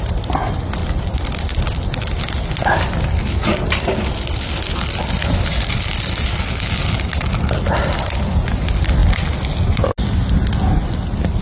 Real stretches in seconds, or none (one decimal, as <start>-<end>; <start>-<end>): 0.0-11.4